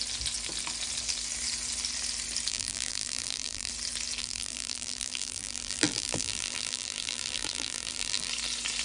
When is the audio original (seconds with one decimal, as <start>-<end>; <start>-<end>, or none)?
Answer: 0.0-2.5; 3.7-4.2; 8.3-8.8